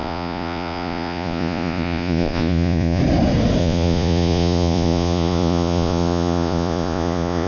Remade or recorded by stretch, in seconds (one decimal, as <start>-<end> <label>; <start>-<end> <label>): 0.0-3.0 remade; 3.0-3.6 recorded; 3.6-7.5 remade